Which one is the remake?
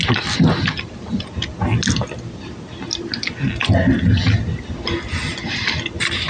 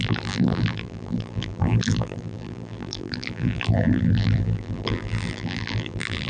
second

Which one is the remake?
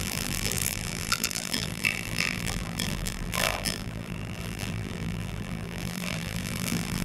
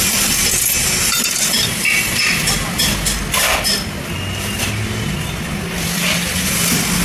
first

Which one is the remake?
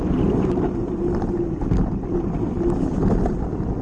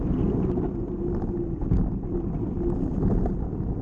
first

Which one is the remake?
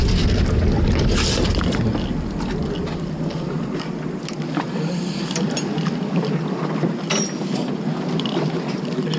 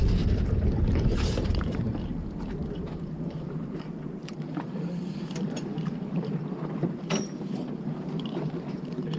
second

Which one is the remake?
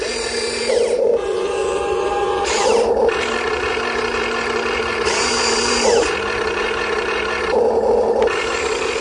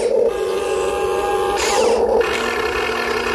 first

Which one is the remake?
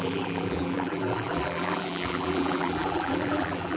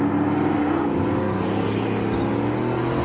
first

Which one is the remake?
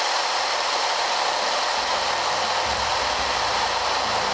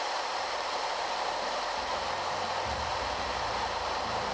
second